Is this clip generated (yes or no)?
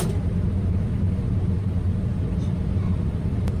yes